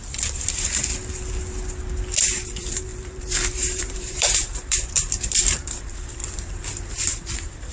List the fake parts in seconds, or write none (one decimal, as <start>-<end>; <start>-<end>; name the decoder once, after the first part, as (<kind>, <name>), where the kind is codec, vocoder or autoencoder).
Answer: 0.0-0.9 (vocoder, BigVGAN v2); 2.2-6.2; 7.0-7.7